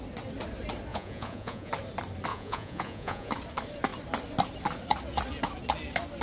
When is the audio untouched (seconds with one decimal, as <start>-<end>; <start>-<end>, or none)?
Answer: 0.0-0.9; 1.7-2.3; 3.3-6.2